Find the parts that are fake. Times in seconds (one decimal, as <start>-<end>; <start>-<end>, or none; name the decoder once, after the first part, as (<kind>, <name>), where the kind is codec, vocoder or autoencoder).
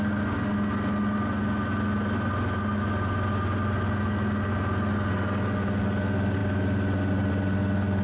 none